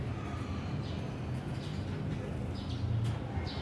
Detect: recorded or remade recorded